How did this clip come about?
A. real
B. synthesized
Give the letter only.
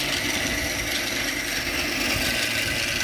A